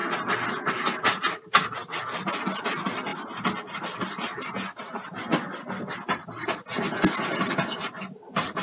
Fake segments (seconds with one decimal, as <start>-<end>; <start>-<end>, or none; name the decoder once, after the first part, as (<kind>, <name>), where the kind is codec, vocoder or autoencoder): none